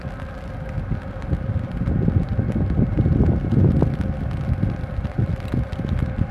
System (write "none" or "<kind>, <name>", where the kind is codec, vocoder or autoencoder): none